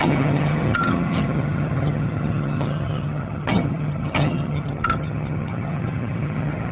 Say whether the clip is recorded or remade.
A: remade